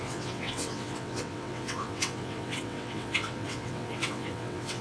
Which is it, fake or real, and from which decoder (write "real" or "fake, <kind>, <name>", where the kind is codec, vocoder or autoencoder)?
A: fake, vocoder, WaveNeXt